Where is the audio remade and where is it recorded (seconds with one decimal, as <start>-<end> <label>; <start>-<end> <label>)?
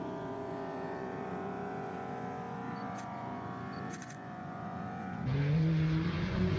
0.0-6.6 remade